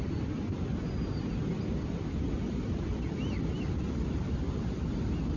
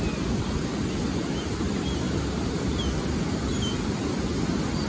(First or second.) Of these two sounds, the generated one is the first